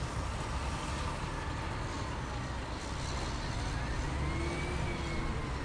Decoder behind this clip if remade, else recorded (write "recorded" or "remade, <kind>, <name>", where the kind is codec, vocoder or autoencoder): recorded